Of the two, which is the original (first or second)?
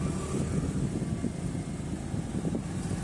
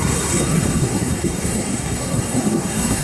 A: first